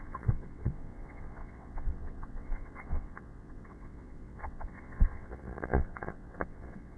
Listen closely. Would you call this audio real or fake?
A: fake